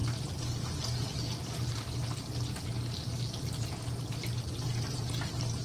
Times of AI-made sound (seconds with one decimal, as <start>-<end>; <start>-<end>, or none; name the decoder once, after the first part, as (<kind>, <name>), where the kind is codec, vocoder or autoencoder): none